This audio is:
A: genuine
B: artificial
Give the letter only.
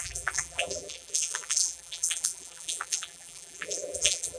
B